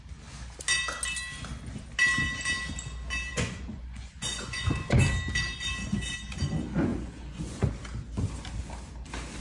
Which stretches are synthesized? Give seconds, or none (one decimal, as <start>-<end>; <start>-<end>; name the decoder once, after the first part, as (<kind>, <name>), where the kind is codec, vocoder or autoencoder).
3.3-5.0 (vocoder, Vocos); 6.9-7.7